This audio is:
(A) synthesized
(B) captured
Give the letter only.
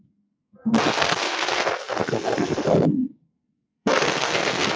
A